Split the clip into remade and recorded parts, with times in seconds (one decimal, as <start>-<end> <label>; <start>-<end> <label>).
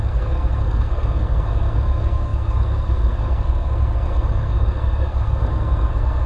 0.0-6.3 remade